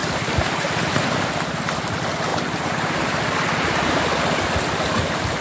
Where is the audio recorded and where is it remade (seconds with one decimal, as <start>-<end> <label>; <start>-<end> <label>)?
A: 0.0-2.3 recorded; 2.3-3.2 remade; 3.2-5.4 recorded